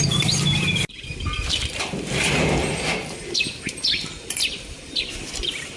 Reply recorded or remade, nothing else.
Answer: remade